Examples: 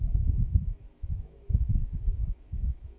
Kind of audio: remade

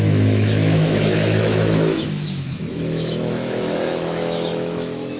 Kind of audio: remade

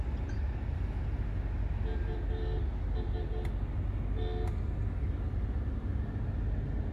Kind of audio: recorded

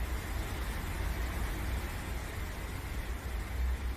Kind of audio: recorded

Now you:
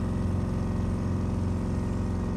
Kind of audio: recorded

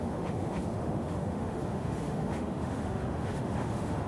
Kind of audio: remade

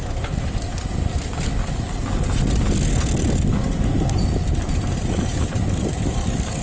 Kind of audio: recorded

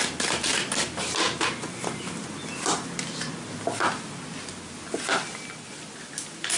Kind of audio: recorded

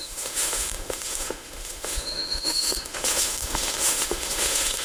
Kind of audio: remade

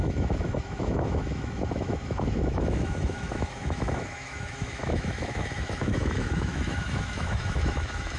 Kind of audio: remade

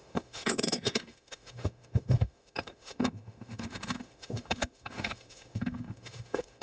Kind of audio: remade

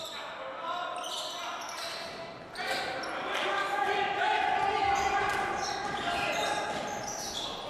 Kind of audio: recorded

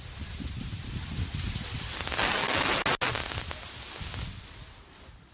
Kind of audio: recorded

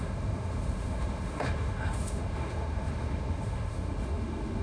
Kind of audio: remade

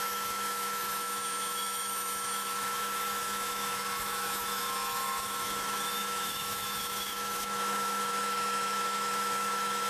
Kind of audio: remade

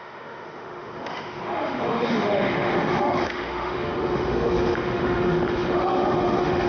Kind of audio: remade